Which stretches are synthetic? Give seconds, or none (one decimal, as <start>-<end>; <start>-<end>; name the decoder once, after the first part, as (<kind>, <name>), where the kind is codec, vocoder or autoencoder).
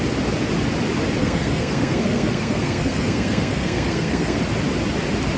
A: 1.2-4.4 (codec, SNAC)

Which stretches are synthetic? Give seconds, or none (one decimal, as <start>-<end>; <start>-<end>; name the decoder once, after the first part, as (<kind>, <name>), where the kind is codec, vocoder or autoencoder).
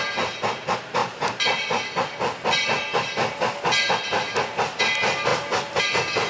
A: none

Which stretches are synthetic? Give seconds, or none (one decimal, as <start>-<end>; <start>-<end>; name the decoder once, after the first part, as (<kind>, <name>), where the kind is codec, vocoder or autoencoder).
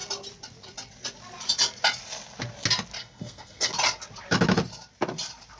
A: 3.0-3.7 (codec, SNAC)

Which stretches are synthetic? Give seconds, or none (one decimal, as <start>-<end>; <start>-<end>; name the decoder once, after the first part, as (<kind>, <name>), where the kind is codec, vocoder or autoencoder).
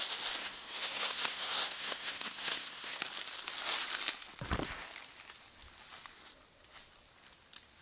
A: 0.4-3.0 (codec, SNAC)